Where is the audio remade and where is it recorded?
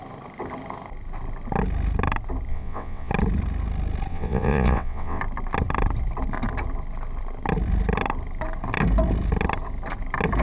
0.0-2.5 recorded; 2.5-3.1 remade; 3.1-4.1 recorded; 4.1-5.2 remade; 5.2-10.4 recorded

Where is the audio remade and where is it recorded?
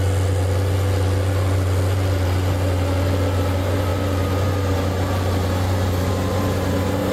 0.0-7.1 recorded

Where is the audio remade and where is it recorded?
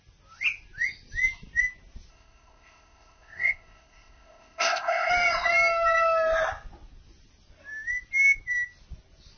0.0-2.1 recorded; 2.1-5.1 remade; 5.1-9.4 recorded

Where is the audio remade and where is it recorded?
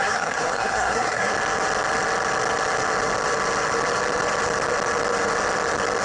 0.0-1.3 remade; 1.3-6.0 recorded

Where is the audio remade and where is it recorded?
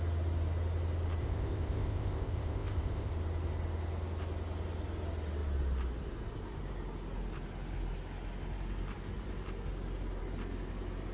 0.0-1.2 recorded; 1.2-3.1 remade; 3.1-11.1 recorded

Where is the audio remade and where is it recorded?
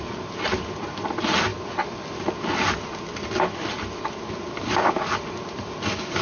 0.0-6.2 recorded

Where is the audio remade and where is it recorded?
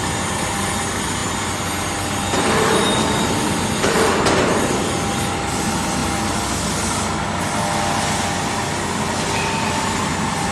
0.0-1.2 recorded; 1.2-4.6 remade; 4.6-10.5 recorded